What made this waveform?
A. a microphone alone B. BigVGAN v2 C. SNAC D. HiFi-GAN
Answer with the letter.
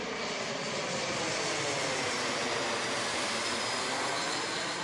A